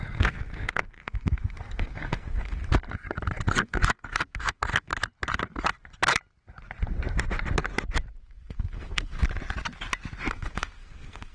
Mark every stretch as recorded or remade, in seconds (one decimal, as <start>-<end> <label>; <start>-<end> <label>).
0.0-2.6 remade; 2.6-3.5 recorded; 3.5-4.9 remade; 4.9-8.3 recorded; 8.3-9.2 remade; 9.2-10.3 recorded; 10.3-11.3 remade